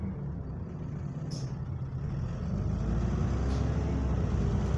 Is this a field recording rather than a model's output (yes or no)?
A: yes